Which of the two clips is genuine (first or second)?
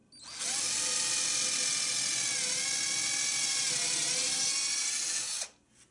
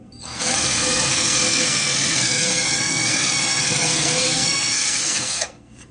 first